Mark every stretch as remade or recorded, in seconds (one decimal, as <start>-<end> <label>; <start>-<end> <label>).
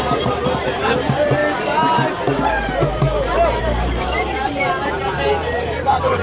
0.0-6.2 remade